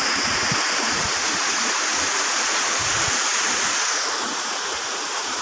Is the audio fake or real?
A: fake